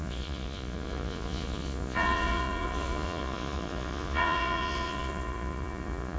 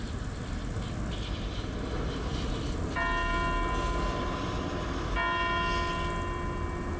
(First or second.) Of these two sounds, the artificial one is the first